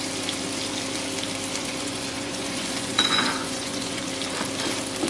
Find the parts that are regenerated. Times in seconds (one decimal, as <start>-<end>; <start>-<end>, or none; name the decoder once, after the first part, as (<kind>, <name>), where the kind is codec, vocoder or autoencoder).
1.6-4.0 (vocoder, Vocos)